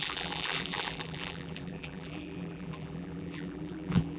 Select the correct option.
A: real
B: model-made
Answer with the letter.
B